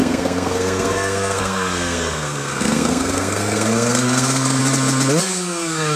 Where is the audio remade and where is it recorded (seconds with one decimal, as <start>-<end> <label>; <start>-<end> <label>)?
0.0-4.6 remade; 4.6-5.2 recorded; 5.2-6.0 remade